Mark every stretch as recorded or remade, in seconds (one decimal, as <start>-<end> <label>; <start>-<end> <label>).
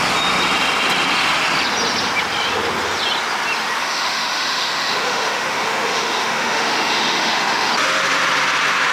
0.0-3.8 recorded; 3.8-7.7 remade; 7.7-8.9 recorded